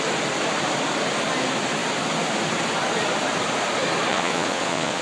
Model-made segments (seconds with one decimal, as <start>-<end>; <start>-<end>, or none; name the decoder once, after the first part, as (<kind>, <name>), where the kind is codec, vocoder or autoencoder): 4.1-5.0 (vocoder, Vocos)

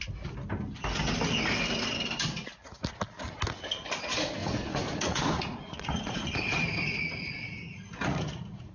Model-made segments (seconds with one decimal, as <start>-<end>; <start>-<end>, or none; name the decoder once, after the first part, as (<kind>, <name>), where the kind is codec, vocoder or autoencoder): 4.4-8.7 (vocoder, Vocos)

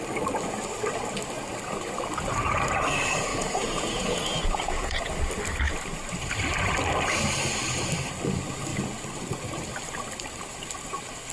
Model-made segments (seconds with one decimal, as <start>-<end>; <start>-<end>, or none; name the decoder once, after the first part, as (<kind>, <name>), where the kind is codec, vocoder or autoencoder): 3.3-5.0 (vocoder, Vocos)

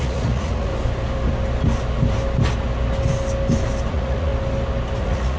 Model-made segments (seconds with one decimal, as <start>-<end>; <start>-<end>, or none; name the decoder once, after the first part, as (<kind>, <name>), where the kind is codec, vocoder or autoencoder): 0.0-0.7 (vocoder, Vocos); 3.9-4.3; 5.0-5.4

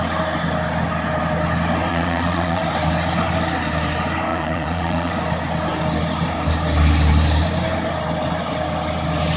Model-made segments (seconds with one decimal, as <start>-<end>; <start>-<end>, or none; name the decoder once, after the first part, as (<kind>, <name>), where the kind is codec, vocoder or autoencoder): 1.9-2.6 (vocoder, Vocos); 4.3-5.1